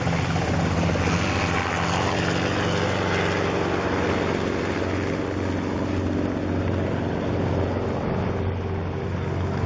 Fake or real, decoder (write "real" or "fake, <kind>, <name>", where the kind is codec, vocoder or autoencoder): real